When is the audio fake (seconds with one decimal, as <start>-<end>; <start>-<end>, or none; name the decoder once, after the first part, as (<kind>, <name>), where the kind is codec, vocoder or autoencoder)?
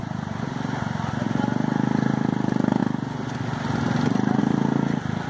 none